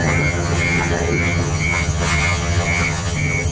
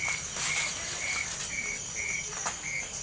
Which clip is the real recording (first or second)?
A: second